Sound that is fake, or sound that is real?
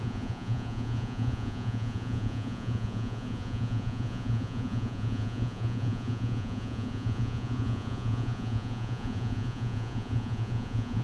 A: fake